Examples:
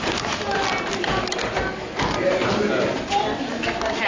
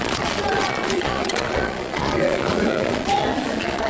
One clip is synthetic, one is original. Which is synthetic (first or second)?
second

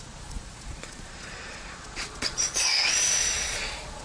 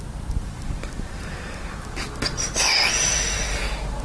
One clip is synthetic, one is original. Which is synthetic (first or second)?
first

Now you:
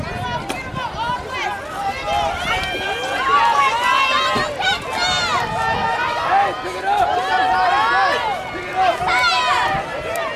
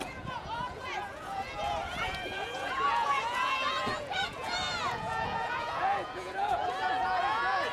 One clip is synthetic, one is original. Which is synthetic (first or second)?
second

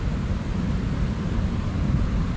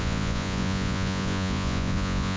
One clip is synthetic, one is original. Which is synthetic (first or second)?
second